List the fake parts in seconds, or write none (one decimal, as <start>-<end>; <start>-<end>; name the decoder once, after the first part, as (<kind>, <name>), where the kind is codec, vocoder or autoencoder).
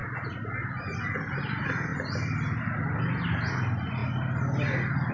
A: none